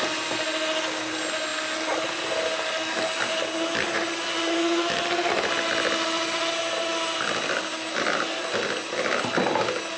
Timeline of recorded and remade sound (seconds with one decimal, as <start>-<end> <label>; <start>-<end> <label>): 0.0-10.0 recorded